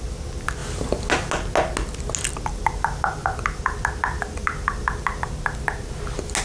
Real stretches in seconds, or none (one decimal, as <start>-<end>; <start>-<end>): 0.0-6.4